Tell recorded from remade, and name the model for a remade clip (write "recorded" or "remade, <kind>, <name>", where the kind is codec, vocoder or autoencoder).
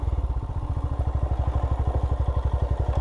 recorded